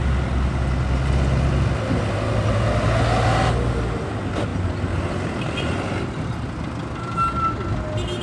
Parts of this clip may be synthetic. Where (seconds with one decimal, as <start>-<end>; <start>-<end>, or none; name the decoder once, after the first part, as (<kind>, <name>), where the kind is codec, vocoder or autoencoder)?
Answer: 4.5-5.7 (vocoder, BigVGAN v2)

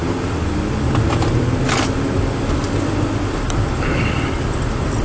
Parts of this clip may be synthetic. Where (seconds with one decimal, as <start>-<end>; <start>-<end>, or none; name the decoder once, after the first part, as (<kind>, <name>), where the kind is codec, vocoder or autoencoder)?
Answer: none

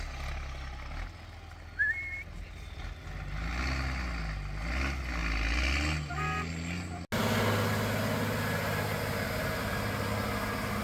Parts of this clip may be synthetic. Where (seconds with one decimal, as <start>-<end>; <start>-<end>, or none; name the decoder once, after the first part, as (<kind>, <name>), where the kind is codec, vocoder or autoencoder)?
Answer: none

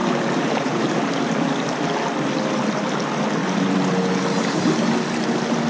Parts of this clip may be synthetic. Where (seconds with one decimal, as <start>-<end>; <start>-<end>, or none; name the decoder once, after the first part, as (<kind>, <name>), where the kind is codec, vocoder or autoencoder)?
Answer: 0.0-0.9 (vocoder, BigVGAN v2); 3.4-3.9

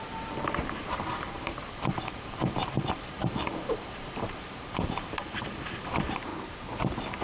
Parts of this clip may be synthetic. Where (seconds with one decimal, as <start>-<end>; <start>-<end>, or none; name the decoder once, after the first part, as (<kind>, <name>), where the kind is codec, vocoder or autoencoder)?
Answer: 0.0-6.3 (vocoder, BigVGAN v2)

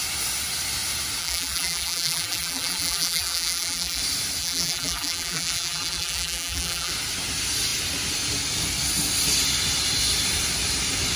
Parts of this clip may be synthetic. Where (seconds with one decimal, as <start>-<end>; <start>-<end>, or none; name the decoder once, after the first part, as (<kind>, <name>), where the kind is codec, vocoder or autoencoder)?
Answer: 1.2-4.0 (vocoder, BigVGAN v2); 4.4-6.9

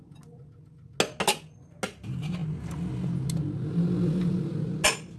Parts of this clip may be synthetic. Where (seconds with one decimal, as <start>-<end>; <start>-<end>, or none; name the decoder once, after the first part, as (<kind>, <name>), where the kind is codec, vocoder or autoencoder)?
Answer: none

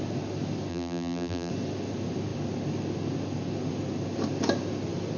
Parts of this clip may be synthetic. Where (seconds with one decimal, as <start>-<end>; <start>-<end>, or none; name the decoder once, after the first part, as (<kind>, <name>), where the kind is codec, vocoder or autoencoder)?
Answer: 0.7-1.5 (vocoder, BigVGAN v2)